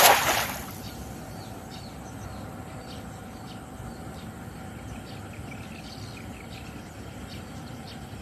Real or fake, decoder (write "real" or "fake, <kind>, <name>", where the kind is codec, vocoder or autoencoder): real